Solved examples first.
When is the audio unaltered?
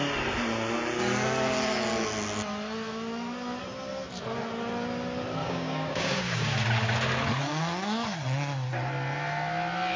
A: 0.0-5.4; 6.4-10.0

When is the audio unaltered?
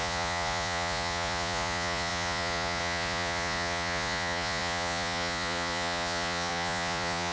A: none